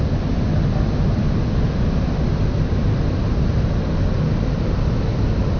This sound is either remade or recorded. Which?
recorded